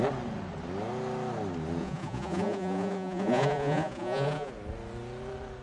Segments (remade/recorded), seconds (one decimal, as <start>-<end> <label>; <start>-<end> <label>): 0.0-1.8 recorded; 1.8-4.5 remade; 4.5-5.6 recorded